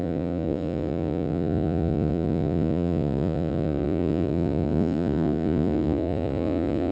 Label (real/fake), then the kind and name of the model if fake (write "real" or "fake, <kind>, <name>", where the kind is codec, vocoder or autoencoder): fake, vocoder, Vocos